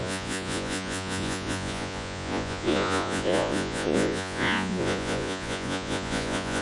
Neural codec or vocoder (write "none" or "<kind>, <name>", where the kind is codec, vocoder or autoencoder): vocoder, Vocos